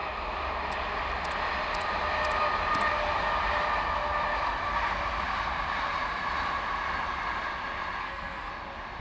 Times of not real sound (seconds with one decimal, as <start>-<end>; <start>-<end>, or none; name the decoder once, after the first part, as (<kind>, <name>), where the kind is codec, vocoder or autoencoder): 8.0-8.5 (codec, SNAC)